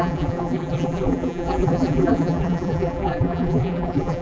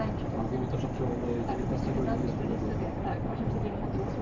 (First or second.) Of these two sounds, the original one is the second